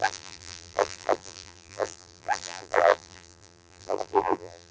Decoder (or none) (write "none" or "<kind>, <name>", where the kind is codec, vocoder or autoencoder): vocoder, BigVGAN v2